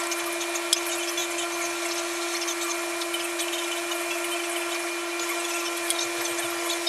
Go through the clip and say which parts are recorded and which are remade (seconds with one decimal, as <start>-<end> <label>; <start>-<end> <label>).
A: 0.0-6.9 recorded